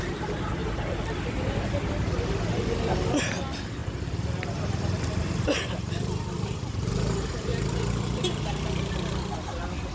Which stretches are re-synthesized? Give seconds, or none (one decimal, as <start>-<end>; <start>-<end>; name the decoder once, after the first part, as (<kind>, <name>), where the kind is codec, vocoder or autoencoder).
0.6-2.1 (vocoder, BigVGAN v2); 3.8-6.7; 7.5-8.4